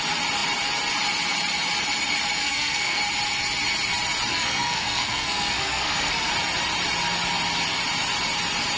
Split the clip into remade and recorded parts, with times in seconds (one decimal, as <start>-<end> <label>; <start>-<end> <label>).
0.0-2.4 recorded; 2.4-3.0 remade; 3.0-4.3 recorded; 4.3-6.3 remade; 6.3-8.8 recorded